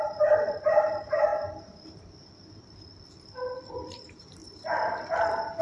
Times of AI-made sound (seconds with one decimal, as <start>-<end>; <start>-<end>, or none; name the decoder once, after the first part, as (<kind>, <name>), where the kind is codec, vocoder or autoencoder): 0.0-1.3 (vocoder, BigVGAN v2); 3.7-5.6